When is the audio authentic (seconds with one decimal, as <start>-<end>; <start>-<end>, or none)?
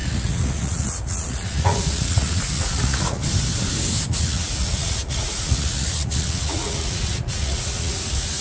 3.2-4.1